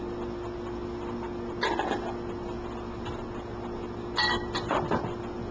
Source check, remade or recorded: recorded